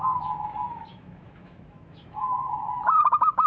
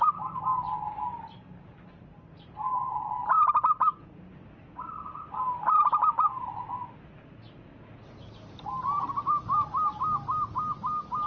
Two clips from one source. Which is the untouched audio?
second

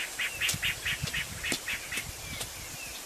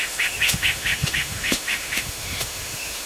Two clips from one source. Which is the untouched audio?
first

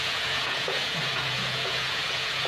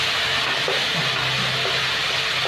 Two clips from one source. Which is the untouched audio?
second